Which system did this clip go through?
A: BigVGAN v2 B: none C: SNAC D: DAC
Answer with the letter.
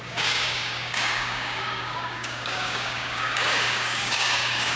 D